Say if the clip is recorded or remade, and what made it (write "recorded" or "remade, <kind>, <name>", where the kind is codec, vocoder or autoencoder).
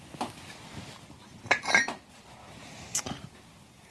recorded